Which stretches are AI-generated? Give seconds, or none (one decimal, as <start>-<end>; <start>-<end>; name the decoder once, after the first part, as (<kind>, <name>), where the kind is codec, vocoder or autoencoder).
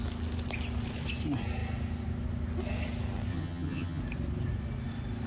3.3-4.0 (vocoder, HiFi-GAN)